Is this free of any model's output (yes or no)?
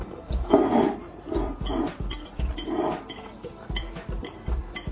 yes